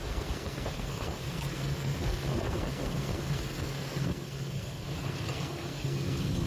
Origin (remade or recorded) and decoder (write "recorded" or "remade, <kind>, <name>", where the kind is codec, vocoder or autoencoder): remade, codec, SNAC